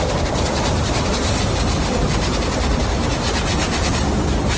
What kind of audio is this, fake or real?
real